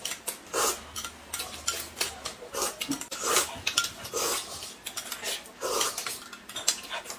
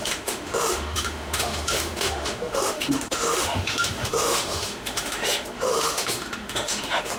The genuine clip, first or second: first